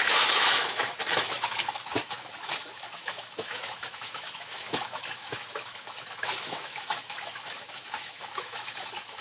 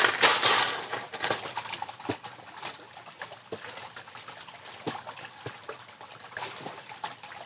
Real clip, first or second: second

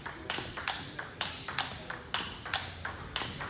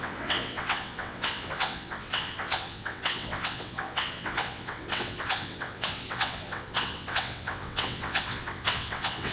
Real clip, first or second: first